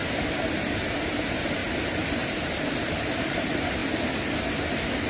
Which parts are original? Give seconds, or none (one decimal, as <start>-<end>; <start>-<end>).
0.0-0.6; 1.6-2.8; 3.8-5.1